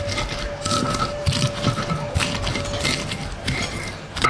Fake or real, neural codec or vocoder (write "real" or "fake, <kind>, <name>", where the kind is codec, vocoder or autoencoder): real